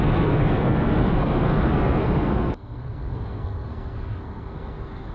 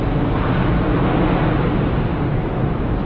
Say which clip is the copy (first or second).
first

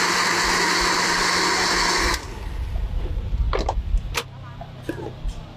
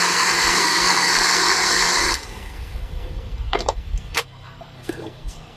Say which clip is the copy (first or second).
second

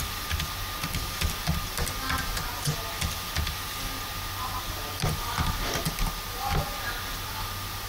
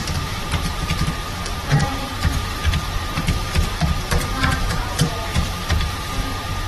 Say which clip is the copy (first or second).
second